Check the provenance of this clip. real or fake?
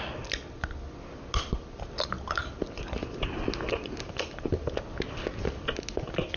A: real